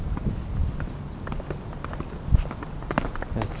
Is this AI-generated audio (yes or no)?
no